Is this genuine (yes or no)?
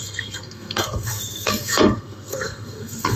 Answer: no